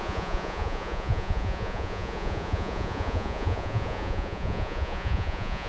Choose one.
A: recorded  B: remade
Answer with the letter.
B